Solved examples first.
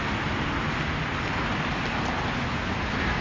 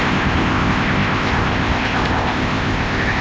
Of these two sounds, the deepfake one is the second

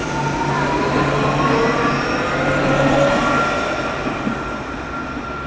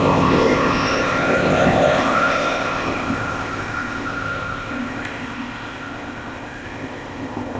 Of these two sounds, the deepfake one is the second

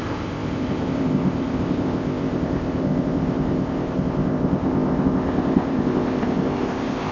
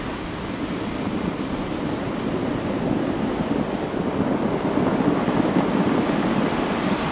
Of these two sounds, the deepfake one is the first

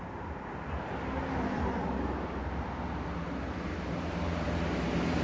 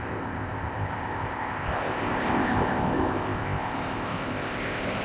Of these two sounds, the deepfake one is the second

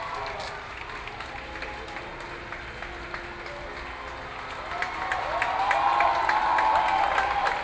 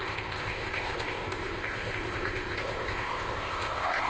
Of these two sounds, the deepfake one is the second